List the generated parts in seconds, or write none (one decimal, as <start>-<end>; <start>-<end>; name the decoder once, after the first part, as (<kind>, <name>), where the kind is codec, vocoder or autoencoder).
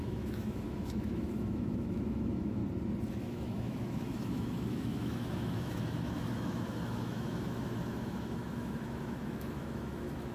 0.0-2.6 (autoencoder, DAC-VAE); 3.2-10.3